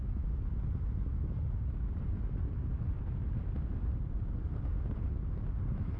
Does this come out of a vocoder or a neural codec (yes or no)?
no